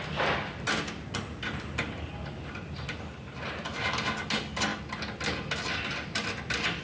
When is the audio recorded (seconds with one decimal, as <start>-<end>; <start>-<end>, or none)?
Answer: 0.0-6.8